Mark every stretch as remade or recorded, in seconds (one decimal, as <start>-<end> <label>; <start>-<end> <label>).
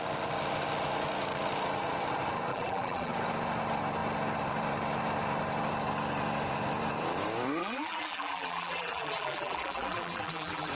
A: 0.0-2.5 recorded; 2.5-3.1 remade; 3.1-7.6 recorded; 7.6-10.7 remade